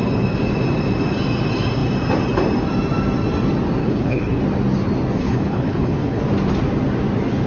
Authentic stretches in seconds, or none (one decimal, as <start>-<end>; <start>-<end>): 0.0-3.8; 4.4-5.2; 6.2-7.5